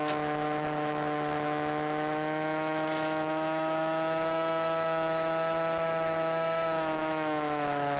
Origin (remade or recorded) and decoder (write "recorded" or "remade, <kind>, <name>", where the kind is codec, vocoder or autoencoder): remade, autoencoder, DAC-VAE